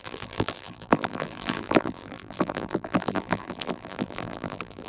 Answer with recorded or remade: remade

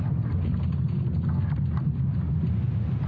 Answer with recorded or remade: recorded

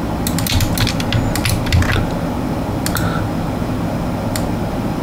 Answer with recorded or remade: recorded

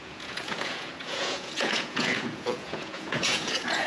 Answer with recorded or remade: remade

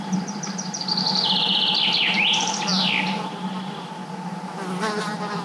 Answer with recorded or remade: remade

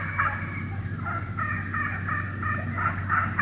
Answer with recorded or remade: recorded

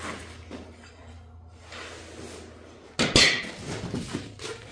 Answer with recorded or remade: recorded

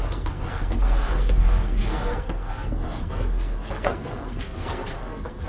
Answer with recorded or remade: remade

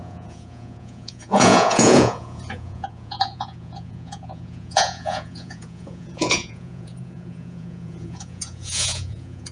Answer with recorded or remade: remade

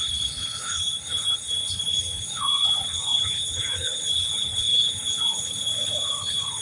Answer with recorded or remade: remade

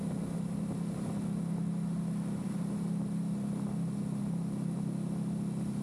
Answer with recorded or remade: recorded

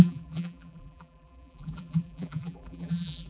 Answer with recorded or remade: remade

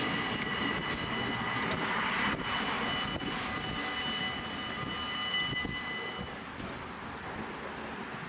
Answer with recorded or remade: recorded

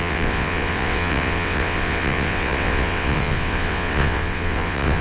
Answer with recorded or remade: remade